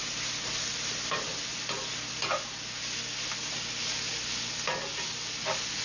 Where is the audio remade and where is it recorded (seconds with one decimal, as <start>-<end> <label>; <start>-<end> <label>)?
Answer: 0.0-5.8 recorded